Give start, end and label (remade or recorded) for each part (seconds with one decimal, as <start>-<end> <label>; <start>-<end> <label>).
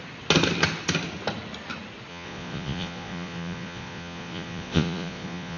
0.0-2.1 recorded; 2.1-5.6 remade